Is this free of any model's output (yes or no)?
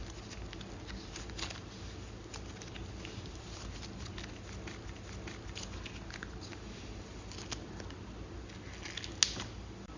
yes